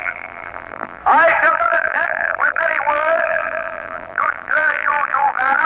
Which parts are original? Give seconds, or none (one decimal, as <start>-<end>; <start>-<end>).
1.0-1.5